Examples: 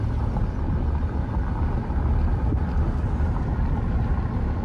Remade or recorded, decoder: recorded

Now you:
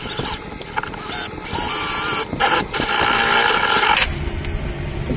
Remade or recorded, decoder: recorded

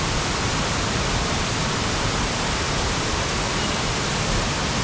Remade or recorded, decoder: recorded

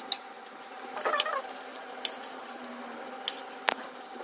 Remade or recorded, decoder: recorded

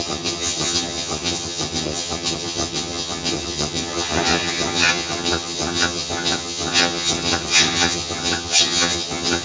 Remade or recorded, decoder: remade, vocoder, HiFi-GAN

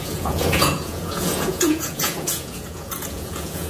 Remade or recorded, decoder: remade, vocoder, Vocos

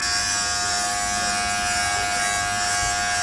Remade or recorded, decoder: recorded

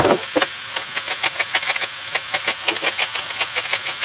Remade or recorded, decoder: recorded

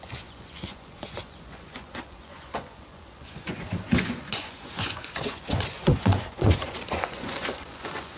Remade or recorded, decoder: remade, vocoder, Vocos